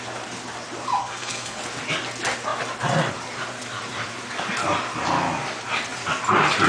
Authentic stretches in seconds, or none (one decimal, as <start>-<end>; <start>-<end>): 0.0-1.0; 1.6-6.7